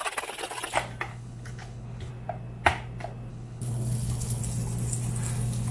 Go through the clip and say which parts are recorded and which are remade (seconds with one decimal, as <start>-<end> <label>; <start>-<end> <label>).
0.0-1.1 recorded; 1.1-2.1 remade; 2.1-3.3 recorded; 3.3-4.4 remade; 4.4-5.7 recorded